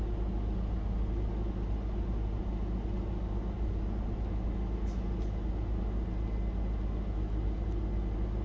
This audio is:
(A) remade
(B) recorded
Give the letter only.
B